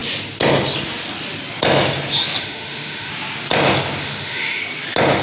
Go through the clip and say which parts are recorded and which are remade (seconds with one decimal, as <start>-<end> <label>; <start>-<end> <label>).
0.0-2.4 recorded; 2.4-3.1 remade; 3.1-4.0 recorded; 4.0-4.6 remade; 4.6-5.2 recorded